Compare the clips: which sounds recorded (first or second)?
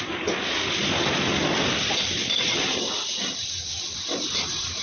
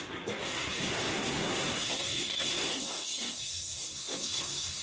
first